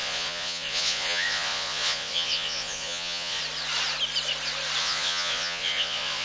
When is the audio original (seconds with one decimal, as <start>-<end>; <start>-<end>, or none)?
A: 3.4-4.8

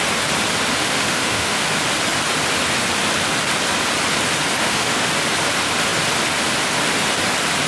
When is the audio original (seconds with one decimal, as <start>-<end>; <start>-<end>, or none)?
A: 0.0-0.8; 1.6-4.6; 5.1-7.7

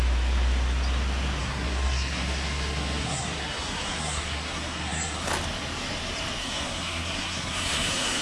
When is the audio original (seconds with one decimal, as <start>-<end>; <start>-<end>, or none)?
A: 0.0-1.4; 5.3-6.4

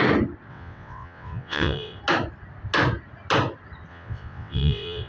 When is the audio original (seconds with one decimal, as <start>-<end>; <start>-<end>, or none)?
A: 0.0-0.5; 2.0-3.9

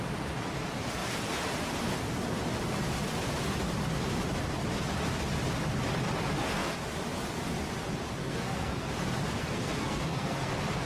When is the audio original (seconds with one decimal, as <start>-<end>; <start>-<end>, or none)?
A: 0.0-8.2; 8.9-9.4; 10.5-10.9

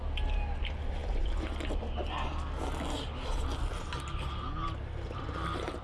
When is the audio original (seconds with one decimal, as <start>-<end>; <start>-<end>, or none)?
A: 0.0-5.8